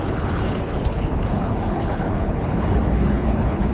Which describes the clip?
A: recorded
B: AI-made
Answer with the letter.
B